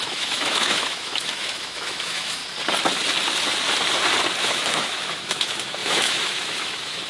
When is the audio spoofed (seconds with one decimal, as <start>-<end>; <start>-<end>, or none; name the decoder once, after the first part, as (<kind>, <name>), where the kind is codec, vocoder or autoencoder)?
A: 0.0-2.4 (autoencoder, DAC-VAE); 4.4-7.1